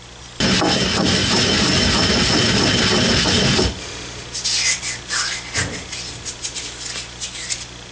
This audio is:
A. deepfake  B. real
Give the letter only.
B